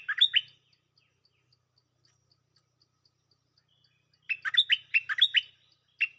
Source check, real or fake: real